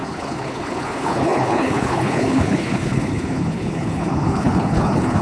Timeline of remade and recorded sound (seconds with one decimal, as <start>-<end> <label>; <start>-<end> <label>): 0.0-5.2 remade